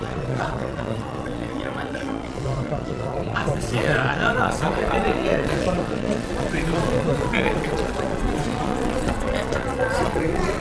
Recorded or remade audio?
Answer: remade